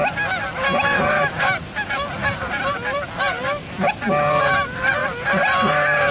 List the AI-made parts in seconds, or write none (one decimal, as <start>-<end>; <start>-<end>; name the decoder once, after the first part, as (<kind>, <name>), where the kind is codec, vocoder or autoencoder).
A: 2.2-4.4 (vocoder, BigVGAN v2); 5.0-6.1